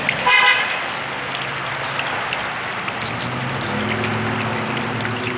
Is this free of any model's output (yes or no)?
yes